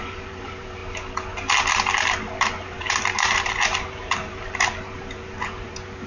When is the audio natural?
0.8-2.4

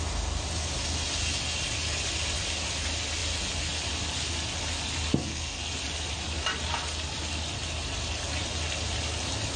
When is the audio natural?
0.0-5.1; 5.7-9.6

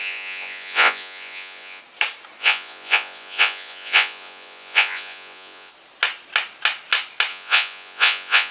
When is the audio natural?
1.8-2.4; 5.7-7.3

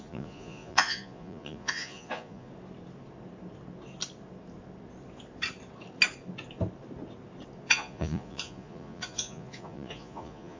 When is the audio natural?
2.5-7.7